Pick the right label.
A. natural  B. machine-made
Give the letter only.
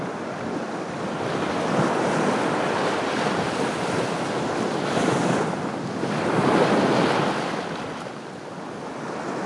A